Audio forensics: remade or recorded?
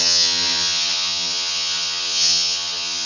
remade